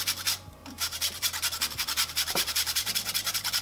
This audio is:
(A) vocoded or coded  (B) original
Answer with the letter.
A